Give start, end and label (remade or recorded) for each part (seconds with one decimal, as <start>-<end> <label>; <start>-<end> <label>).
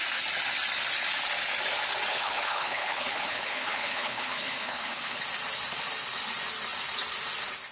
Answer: 0.0-2.1 recorded; 2.1-5.2 remade; 5.2-7.7 recorded